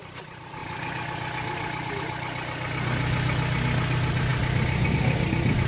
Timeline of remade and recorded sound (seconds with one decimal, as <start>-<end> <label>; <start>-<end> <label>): 0.0-5.7 recorded